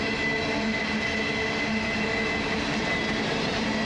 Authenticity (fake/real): real